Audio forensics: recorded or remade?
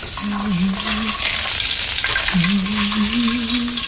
recorded